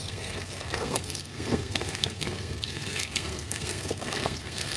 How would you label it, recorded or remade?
remade